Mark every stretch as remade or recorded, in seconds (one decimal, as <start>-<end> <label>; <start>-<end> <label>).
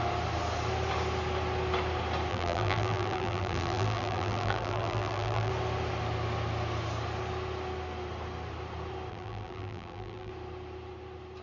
0.0-2.3 recorded; 2.3-5.5 remade; 5.5-9.1 recorded; 9.1-10.3 remade; 10.3-11.4 recorded